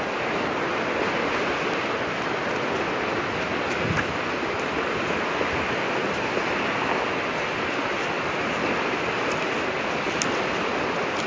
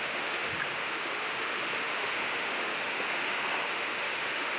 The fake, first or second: second